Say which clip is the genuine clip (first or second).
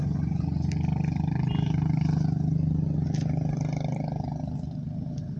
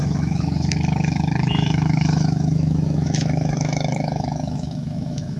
first